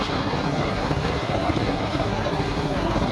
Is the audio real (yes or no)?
no